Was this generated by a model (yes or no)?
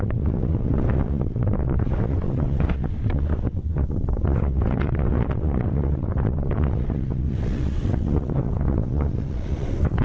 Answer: yes